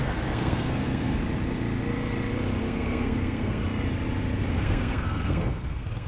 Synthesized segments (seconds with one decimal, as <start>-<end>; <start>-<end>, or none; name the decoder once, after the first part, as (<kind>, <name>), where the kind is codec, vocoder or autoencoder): 0.0-1.1 (codec, SNAC); 2.6-3.6; 4.5-6.1